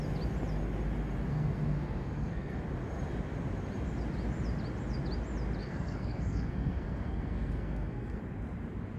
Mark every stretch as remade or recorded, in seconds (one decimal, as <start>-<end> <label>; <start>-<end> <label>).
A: 0.0-1.3 recorded; 1.3-2.6 remade; 2.6-5.6 recorded; 5.6-8.2 remade; 8.2-9.0 recorded